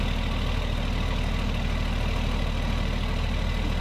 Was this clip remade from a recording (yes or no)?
no